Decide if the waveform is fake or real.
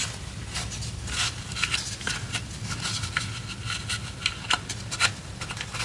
real